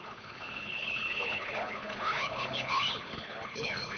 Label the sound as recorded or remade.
remade